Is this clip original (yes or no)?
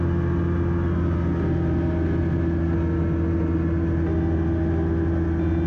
yes